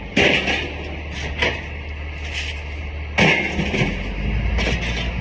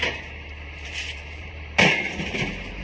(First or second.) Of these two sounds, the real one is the first